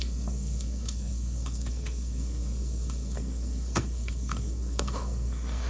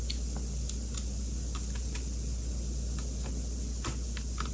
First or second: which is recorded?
second